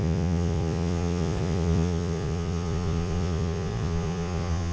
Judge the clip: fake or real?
fake